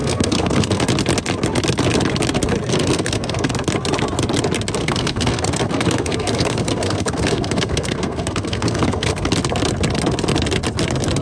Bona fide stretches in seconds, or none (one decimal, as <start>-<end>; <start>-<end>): 0.8-2.7; 3.5-4.8; 9.3-11.2